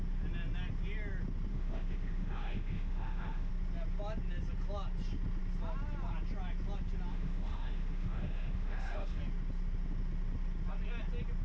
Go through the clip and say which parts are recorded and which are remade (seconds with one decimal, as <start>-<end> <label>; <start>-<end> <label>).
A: 0.0-1.5 recorded; 1.5-3.5 remade; 3.5-7.1 recorded; 7.1-9.2 remade; 9.2-11.4 recorded